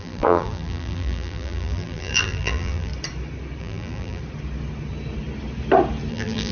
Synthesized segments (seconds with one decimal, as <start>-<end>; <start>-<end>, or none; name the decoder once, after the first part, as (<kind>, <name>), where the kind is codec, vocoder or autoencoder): 0.0-2.9 (vocoder, BigVGAN v2); 3.6-4.2; 6.1-6.5